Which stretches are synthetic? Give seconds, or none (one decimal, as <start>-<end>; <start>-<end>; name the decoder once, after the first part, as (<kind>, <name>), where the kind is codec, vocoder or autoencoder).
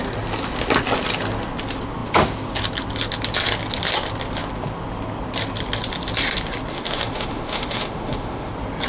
6.7-8.5 (autoencoder, DAC-VAE)